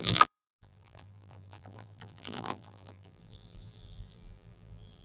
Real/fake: fake